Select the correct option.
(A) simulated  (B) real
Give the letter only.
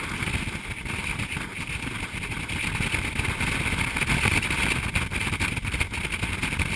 B